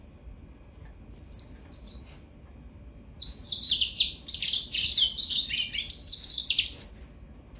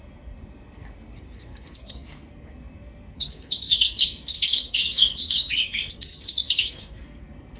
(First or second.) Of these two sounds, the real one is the first